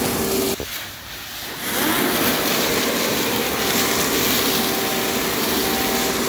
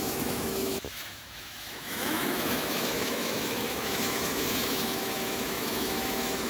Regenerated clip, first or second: second